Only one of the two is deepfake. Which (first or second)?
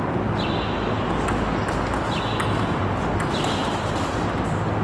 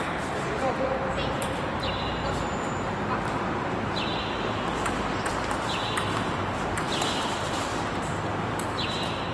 second